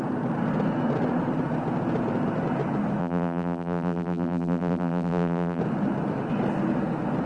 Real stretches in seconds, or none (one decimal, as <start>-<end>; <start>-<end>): 0.0-3.0; 5.6-7.3